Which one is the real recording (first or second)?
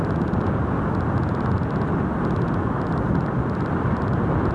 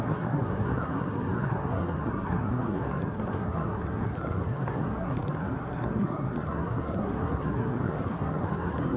first